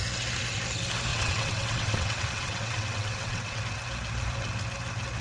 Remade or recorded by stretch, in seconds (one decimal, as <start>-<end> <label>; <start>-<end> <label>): 0.0-1.1 recorded; 1.1-3.6 remade; 3.6-5.2 recorded